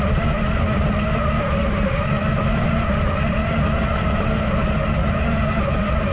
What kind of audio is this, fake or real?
real